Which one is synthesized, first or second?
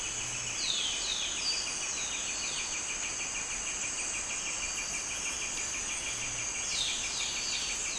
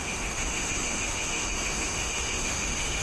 second